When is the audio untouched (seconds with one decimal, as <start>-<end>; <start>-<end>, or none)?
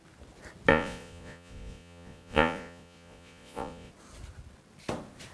0.0-0.7; 3.9-5.3